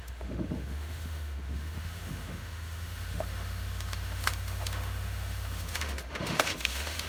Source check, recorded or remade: remade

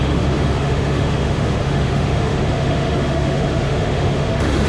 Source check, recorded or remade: remade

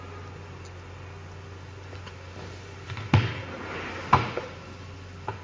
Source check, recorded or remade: recorded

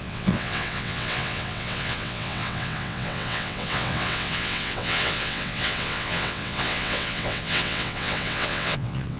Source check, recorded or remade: remade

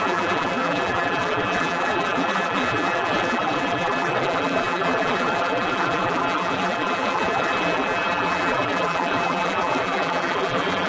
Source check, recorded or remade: remade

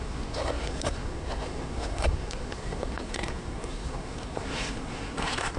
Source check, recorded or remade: remade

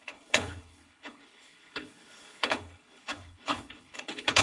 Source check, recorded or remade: remade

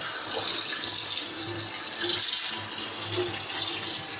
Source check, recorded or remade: recorded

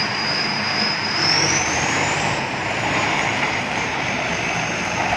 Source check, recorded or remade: remade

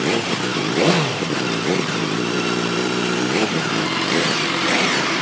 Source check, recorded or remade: remade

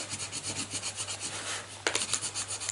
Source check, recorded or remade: recorded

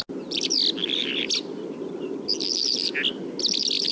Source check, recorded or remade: recorded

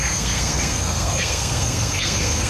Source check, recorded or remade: remade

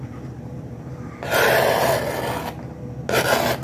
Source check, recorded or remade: recorded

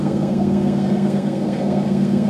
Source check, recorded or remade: remade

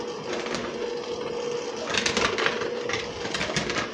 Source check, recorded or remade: recorded